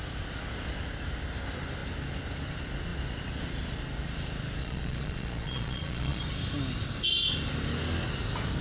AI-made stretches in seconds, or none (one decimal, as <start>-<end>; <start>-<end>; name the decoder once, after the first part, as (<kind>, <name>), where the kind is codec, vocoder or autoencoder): 4.6-6.2 (vocoder, Vocos)